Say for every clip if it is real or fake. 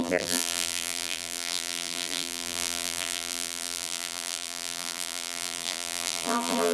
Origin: fake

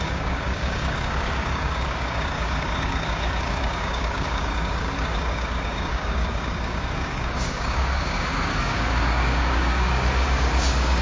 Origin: fake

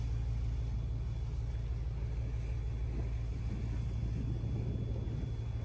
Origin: real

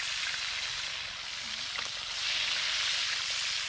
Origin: real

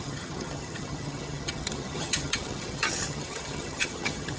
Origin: fake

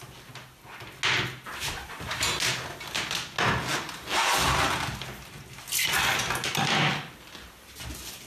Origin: real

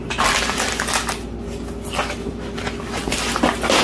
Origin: real